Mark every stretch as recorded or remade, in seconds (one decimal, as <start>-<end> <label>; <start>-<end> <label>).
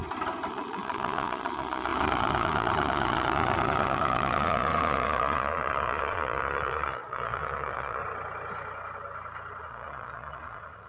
0.0-0.5 recorded; 0.5-8.0 remade; 8.0-9.6 recorded; 9.6-10.9 remade